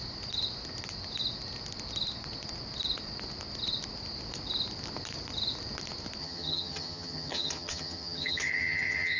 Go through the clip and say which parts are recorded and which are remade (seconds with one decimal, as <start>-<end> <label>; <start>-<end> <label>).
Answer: 0.0-6.2 recorded; 6.2-9.2 remade